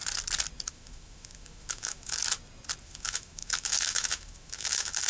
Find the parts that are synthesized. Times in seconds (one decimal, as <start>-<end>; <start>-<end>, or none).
0.7-2.2; 2.8-5.1